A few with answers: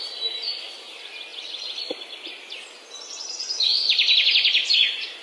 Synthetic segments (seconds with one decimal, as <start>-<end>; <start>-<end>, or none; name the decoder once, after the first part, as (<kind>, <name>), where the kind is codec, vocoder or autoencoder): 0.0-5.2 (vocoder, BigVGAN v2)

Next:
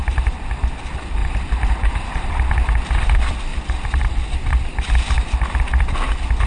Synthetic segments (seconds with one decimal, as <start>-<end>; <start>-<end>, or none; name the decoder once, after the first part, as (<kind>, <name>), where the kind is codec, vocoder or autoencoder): 0.0-0.6 (vocoder, BigVGAN v2); 1.2-2.3; 3.5-4.9

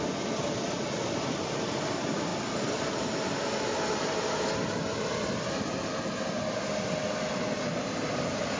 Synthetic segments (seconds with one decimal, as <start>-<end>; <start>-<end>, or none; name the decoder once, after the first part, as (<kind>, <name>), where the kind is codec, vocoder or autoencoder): none

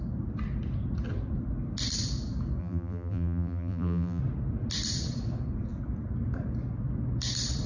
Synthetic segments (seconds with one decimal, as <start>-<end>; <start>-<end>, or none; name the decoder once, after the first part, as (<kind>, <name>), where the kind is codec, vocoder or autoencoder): 2.6-4.2 (vocoder, BigVGAN v2)

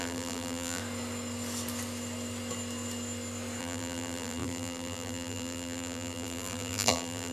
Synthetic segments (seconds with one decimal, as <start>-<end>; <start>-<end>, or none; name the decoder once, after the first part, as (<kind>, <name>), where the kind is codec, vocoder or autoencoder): 0.0-0.8 (vocoder, BigVGAN v2); 3.6-7.3